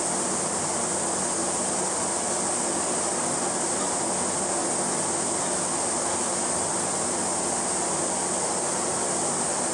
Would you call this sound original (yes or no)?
yes